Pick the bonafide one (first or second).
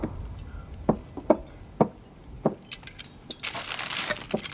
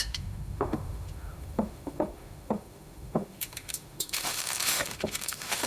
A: first